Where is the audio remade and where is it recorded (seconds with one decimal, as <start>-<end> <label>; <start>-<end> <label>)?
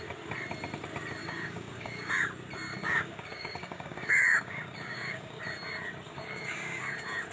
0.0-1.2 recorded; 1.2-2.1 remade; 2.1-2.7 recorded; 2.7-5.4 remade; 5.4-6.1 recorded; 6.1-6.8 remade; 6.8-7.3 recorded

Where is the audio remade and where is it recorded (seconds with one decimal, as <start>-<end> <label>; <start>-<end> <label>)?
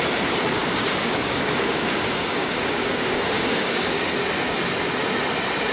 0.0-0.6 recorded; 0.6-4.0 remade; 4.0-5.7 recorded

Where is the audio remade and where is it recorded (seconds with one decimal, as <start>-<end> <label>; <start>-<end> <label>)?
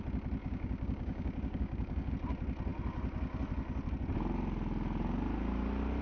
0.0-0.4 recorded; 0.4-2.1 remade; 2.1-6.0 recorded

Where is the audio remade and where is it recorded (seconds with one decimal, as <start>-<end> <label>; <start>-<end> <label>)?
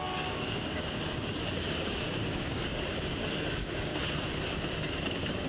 0.0-3.9 remade; 3.9-4.7 recorded; 4.7-5.5 remade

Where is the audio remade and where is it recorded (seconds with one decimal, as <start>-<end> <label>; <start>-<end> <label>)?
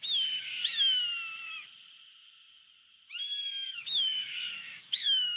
0.0-3.7 recorded; 3.7-5.4 remade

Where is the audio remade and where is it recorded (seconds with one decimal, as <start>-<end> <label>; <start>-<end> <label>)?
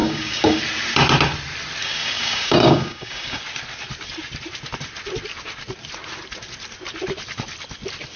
0.0-0.6 remade; 0.6-1.8 recorded; 1.8-3.4 remade; 3.4-8.2 recorded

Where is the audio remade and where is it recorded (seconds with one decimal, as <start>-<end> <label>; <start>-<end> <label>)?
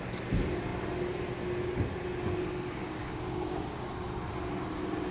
0.0-2.8 recorded; 2.8-3.9 remade; 3.9-5.1 recorded